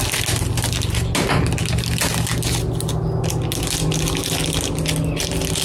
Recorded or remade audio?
recorded